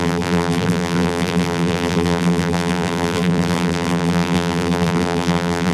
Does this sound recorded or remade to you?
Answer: remade